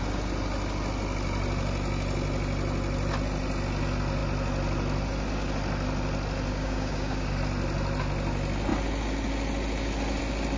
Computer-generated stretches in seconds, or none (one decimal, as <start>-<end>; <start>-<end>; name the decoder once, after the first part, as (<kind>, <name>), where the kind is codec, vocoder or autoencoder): 6.5-7.4 (codec, DAC)

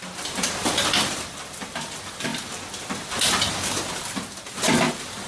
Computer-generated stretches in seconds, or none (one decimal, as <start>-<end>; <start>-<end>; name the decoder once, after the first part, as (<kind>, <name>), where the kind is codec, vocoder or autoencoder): none

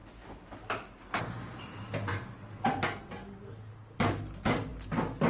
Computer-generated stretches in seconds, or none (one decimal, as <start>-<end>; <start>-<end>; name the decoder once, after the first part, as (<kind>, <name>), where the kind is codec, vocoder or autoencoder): none

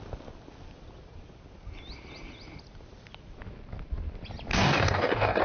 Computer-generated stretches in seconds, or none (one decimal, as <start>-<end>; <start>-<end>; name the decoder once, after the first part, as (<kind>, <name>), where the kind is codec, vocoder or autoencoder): 4.5-5.4 (codec, DAC)

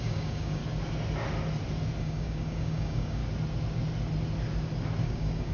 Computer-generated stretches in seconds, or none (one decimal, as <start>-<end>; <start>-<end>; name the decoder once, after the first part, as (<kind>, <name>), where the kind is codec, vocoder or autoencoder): 0.0-0.6 (codec, DAC); 2.0-3.2; 5.0-5.5

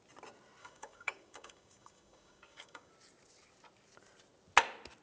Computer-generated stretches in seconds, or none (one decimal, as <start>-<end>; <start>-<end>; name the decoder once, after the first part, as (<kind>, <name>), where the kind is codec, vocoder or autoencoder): 0.6-2.9 (codec, DAC)

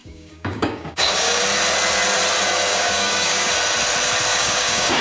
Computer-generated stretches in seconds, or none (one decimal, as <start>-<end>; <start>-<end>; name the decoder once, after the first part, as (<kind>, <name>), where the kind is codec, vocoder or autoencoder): 0.0-1.4 (codec, DAC); 2.7-3.5; 4.3-5.0